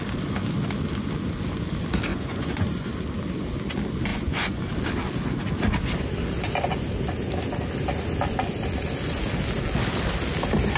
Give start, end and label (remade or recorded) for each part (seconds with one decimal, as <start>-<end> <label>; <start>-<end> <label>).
0.0-2.1 recorded; 2.1-2.9 remade; 2.9-4.1 recorded; 4.1-4.6 remade; 4.6-10.8 recorded